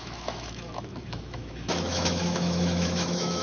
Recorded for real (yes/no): no